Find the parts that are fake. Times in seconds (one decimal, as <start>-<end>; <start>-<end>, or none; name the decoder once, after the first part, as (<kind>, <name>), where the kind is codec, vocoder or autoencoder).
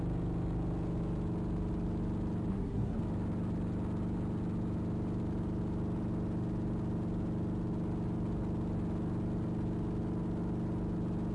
2.5-3.0 (codec, SNAC)